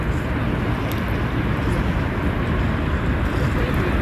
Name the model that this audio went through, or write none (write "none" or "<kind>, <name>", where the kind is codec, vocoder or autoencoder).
none